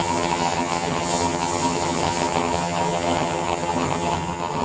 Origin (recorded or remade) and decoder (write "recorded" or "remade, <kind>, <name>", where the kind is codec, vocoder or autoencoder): remade, vocoder, HiFi-GAN